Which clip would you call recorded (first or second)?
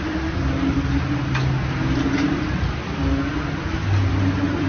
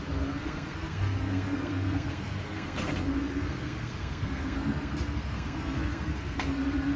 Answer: first